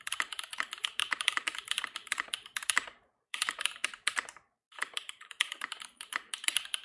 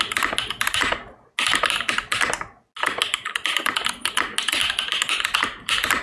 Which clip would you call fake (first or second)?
first